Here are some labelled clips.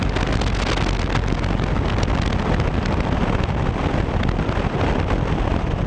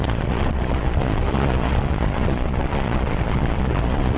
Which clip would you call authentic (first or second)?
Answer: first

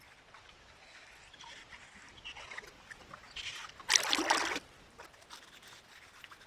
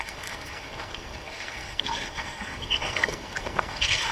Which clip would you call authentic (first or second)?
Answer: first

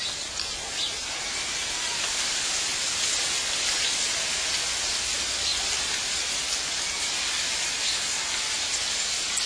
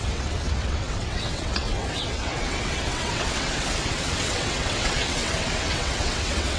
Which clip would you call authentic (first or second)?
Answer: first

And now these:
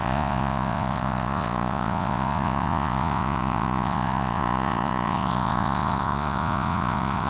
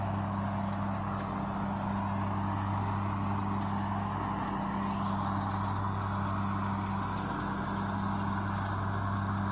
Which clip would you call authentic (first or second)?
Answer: second